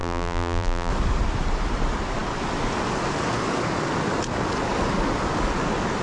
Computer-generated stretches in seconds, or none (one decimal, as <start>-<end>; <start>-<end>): 0.0-0.9